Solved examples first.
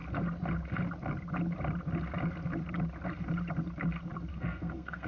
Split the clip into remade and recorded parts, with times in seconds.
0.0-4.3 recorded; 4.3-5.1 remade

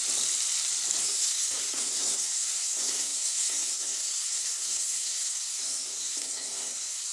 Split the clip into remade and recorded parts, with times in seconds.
0.0-1.0 recorded; 1.0-7.1 remade

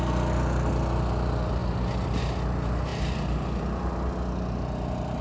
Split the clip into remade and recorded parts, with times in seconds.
0.0-5.2 recorded

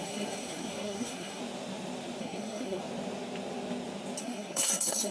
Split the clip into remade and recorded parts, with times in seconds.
0.0-1.4 remade; 1.4-2.2 recorded; 2.2-2.8 remade; 2.8-4.2 recorded; 4.2-5.1 remade

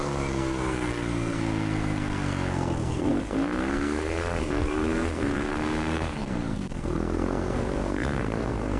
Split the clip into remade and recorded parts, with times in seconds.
0.0-8.8 remade

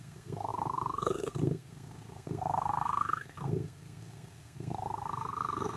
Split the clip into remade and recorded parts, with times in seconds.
0.0-5.8 remade

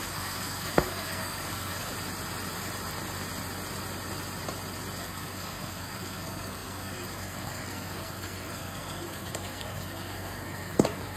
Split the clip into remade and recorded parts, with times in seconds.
0.0-1.9 remade; 1.9-5.0 recorded; 5.0-11.2 remade